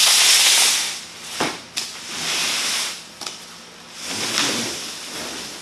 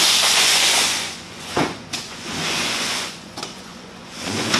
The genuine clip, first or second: first